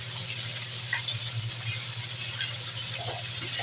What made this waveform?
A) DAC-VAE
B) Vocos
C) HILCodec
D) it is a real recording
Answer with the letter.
D